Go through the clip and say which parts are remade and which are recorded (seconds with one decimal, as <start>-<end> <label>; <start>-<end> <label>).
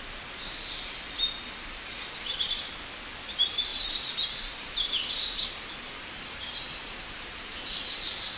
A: 0.0-3.7 recorded; 3.7-8.4 remade